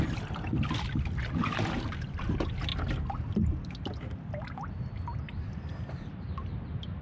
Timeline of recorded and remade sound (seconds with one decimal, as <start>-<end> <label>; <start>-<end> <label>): 0.0-7.0 recorded